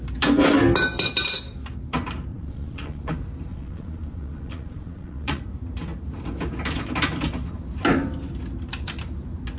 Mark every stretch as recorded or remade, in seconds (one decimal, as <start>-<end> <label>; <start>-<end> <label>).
0.0-2.3 recorded; 2.3-3.1 remade; 3.1-3.5 recorded; 3.5-5.4 remade; 5.4-9.6 recorded